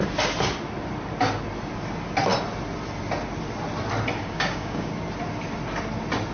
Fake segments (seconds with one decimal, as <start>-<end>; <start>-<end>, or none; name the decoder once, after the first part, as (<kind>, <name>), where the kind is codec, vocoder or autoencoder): 4.2-4.9 (codec, DAC)